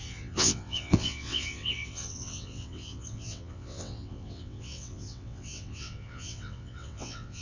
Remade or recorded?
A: remade